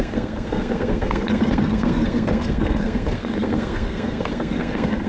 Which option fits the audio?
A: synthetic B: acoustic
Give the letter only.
A